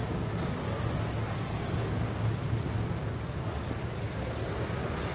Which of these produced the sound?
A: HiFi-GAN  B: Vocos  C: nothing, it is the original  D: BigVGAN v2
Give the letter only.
C